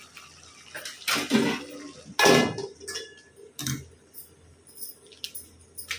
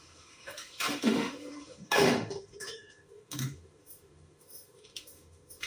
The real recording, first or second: first